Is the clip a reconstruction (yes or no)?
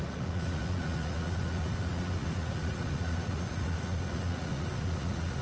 yes